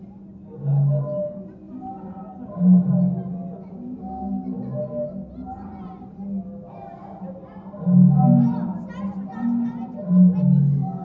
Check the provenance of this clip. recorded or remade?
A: recorded